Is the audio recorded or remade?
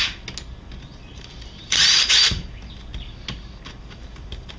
recorded